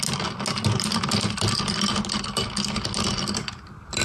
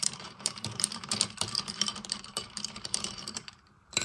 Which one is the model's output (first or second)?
second